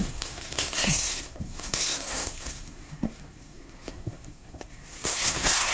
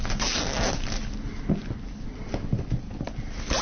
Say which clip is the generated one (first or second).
first